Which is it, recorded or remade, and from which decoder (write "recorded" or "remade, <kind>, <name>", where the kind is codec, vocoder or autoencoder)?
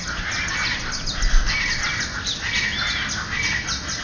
recorded